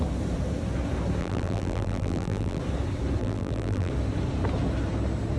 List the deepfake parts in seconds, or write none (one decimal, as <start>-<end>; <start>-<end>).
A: 1.2-2.6; 3.2-3.9